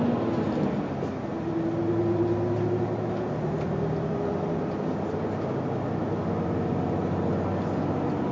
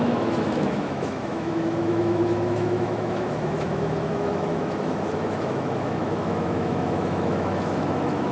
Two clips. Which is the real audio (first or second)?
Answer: first